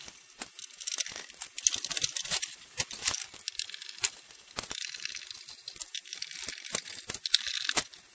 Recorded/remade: recorded